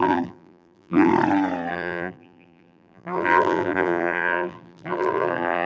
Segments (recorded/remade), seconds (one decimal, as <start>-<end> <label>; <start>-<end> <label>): 0.0-1.1 remade; 1.1-1.7 recorded; 1.7-5.7 remade